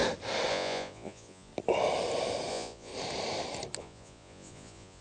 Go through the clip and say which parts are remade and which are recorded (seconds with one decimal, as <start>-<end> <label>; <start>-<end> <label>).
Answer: 0.0-0.5 recorded; 0.5-1.5 remade; 1.5-2.5 recorded; 2.5-2.9 remade; 2.9-3.8 recorded; 3.8-5.0 remade